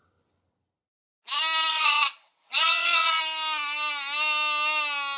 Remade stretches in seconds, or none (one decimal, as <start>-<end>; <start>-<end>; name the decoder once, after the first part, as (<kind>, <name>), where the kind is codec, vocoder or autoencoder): 1.7-3.2 (vocoder, WaveNeXt)